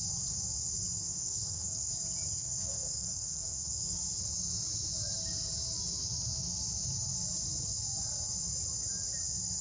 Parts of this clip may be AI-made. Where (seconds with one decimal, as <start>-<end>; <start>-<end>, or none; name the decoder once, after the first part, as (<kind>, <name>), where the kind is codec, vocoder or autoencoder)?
1.0-1.9 (codec, SNAC); 2.4-3.9